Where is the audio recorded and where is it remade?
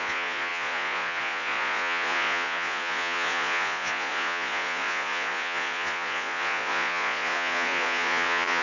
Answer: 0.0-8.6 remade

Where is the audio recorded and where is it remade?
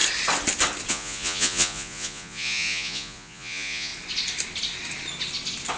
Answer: 0.0-0.9 recorded; 0.9-3.9 remade; 3.9-5.8 recorded